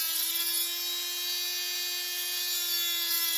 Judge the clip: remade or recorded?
recorded